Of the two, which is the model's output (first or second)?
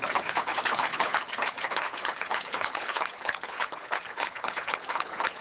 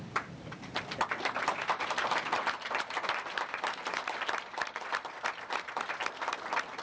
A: first